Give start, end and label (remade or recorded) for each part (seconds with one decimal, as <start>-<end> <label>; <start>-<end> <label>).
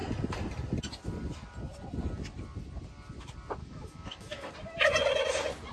0.0-3.6 recorded; 3.6-4.5 remade; 4.5-5.7 recorded